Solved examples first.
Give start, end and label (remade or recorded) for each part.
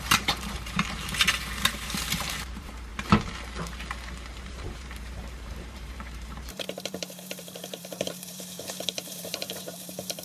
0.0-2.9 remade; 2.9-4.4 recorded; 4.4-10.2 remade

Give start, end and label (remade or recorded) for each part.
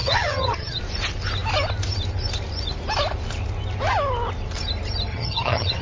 0.0-0.8 remade; 0.8-5.1 recorded; 5.1-5.8 remade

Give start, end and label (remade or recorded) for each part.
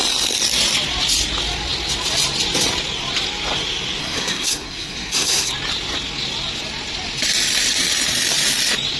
0.0-4.0 recorded; 4.0-5.5 remade; 5.5-9.0 recorded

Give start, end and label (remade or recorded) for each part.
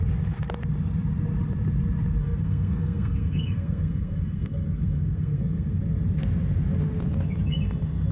0.0-2.2 recorded; 2.2-5.8 remade; 5.8-8.1 recorded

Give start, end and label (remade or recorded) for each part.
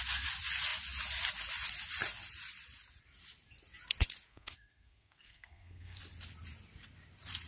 0.0-4.3 recorded; 4.3-6.0 remade; 6.0-7.5 recorded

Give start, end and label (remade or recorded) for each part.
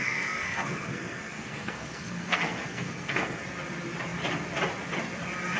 0.0-3.4 remade; 3.4-5.6 recorded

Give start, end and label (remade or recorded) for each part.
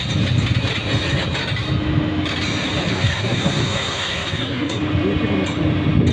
0.0-2.9 recorded; 2.9-4.8 remade; 4.8-6.1 recorded